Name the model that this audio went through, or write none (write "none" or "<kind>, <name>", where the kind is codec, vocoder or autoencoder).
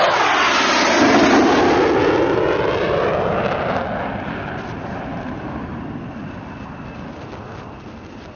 none